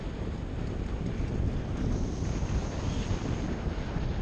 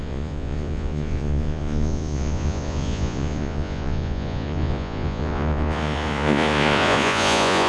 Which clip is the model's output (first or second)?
second